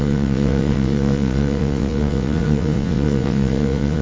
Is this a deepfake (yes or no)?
yes